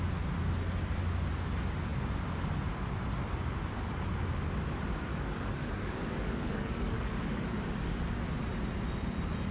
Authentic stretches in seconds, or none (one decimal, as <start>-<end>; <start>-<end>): 0.0-5.1; 8.0-9.5